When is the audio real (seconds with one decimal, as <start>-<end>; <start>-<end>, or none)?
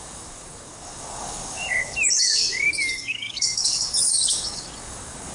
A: none